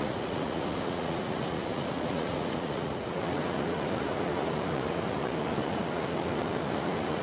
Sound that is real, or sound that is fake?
fake